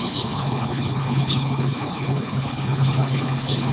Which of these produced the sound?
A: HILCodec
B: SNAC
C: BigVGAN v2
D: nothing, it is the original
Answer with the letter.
A